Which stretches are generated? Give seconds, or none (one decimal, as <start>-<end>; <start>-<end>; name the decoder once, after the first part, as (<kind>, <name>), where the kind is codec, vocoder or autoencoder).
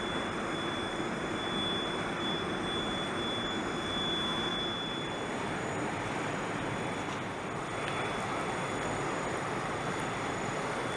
none